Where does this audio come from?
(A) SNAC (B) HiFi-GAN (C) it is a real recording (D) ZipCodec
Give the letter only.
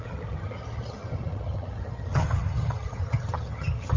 B